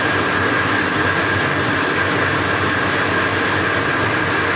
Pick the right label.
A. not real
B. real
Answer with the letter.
B